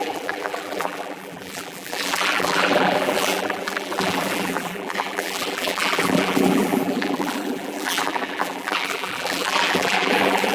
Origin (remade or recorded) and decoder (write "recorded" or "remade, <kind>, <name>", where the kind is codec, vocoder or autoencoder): remade, vocoder, BigVGAN v2